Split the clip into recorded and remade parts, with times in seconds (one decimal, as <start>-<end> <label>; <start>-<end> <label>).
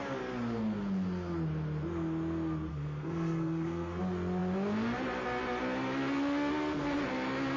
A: 0.0-2.7 recorded; 2.7-4.0 remade; 4.0-7.6 recorded